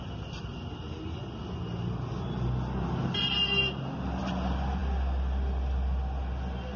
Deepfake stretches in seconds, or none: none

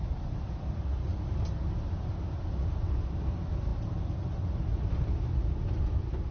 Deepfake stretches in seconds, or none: none

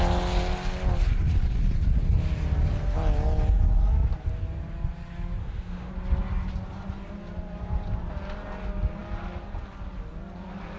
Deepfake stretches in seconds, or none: 5.4-5.9

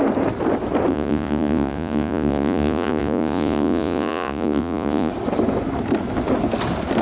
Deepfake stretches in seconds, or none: 0.9-5.1

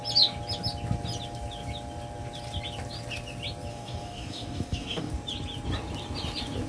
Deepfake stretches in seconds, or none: 3.7-5.1

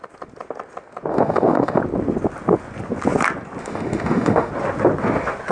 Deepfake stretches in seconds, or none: 1.1-1.8; 3.6-4.5

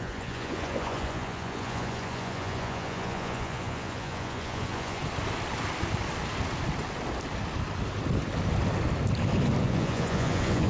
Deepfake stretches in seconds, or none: 0.0-5.0; 9.6-10.7

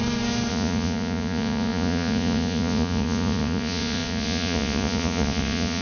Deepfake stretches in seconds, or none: 0.5-5.8